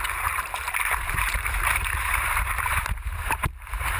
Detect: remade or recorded remade